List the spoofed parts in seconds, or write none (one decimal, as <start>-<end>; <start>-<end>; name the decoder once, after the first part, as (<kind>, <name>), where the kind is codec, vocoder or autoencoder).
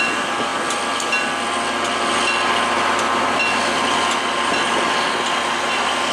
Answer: none